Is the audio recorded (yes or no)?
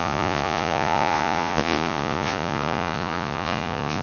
no